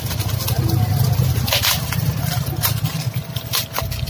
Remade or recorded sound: recorded